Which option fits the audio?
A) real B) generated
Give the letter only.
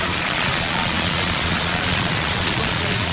B